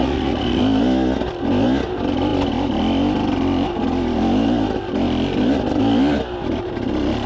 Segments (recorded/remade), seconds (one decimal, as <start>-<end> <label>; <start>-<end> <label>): 0.0-0.6 remade; 0.6-7.3 recorded